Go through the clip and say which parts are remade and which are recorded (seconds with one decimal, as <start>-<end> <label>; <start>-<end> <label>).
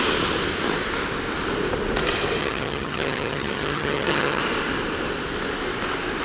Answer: 0.0-2.4 recorded; 2.4-4.4 remade; 4.4-6.2 recorded